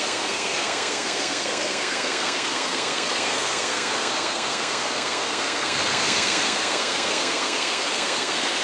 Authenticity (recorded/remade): remade